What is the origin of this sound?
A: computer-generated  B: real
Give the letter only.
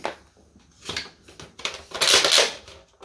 B